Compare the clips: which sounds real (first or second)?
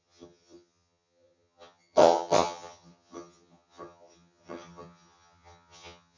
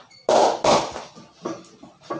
second